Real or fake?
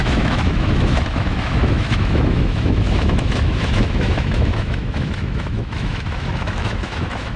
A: fake